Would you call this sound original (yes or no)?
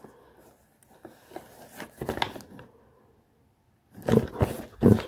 yes